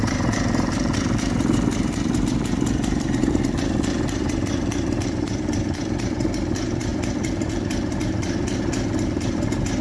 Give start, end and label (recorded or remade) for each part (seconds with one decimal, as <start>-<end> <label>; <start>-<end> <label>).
0.0-9.8 remade